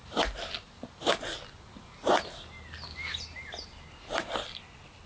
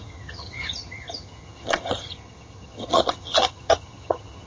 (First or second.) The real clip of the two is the first